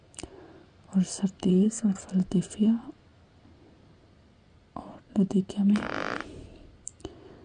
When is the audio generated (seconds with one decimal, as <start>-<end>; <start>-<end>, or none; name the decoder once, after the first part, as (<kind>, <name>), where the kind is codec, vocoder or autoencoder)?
1.5-2.0 (codec, SNAC)

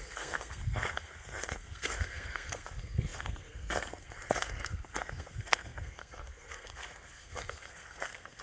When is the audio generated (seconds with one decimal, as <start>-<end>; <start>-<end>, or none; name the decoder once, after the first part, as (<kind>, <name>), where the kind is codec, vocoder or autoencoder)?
0.0-8.4 (codec, SNAC)

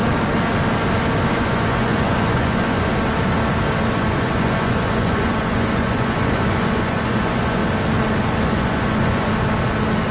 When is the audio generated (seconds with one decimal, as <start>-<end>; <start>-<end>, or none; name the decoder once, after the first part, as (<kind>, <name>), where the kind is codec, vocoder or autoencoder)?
1.3-2.9 (vocoder, Vocos); 3.9-7.6; 8.4-9.3